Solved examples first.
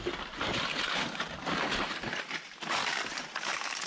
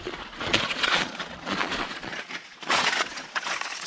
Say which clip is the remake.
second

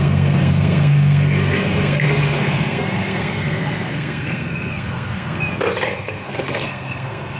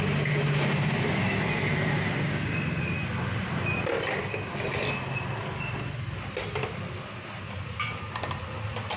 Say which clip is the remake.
first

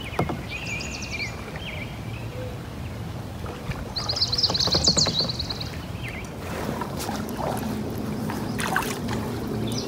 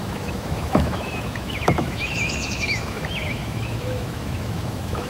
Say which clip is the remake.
second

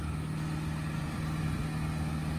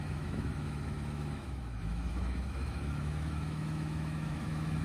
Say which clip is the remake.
second